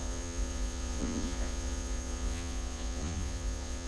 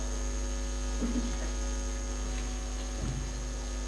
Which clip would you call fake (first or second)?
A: first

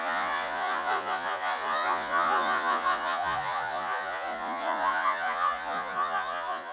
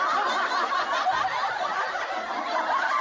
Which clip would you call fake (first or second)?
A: first